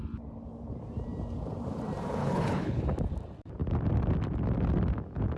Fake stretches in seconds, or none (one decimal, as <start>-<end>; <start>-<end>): 2.2-2.8